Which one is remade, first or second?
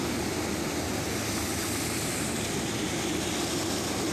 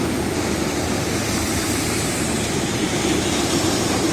second